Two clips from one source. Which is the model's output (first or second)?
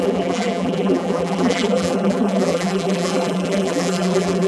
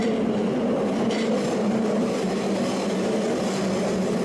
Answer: first